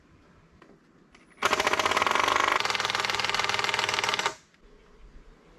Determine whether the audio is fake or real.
real